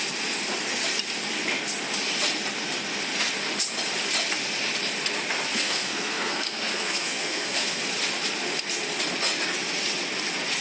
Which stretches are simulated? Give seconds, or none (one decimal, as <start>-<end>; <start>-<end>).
5.5-7.8